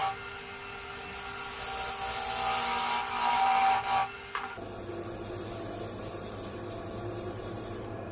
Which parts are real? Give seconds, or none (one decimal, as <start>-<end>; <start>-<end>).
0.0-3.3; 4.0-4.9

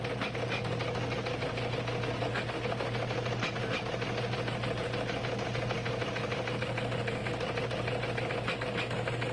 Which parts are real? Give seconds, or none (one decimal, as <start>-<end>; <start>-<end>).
0.0-9.3

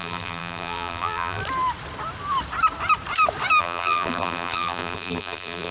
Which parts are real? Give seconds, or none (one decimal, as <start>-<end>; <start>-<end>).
1.4-3.6

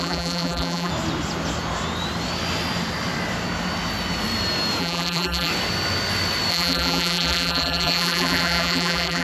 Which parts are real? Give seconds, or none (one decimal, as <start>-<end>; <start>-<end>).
0.9-4.8; 5.5-6.5

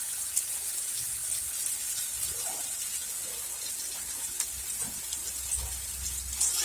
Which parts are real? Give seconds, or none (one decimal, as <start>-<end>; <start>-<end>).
0.0-6.6

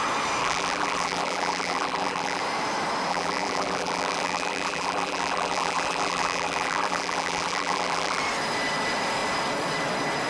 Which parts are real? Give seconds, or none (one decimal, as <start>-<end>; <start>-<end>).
0.0-0.4; 2.4-3.1; 8.2-10.3

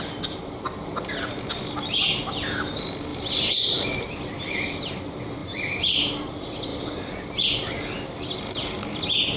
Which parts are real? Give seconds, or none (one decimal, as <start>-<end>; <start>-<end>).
0.0-3.1; 4.9-5.4; 6.3-6.7; 7.5-9.4